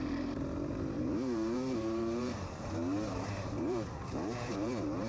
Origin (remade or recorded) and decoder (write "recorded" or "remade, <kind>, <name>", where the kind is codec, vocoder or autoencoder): remade, vocoder, BigVGAN v2